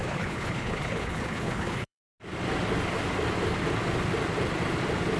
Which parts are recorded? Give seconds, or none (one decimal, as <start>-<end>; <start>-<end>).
2.0-5.2